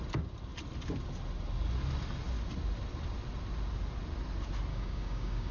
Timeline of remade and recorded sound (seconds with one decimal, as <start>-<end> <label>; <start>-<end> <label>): 0.0-4.7 recorded; 4.7-5.5 remade